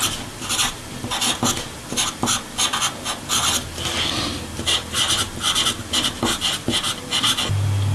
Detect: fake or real real